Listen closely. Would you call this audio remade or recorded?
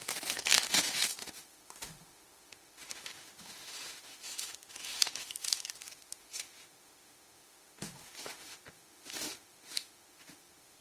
remade